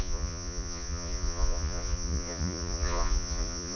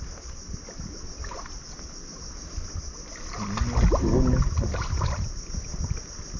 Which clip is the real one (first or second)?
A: second